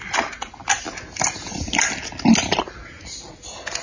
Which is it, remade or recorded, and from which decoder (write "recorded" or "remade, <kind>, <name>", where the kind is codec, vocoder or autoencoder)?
recorded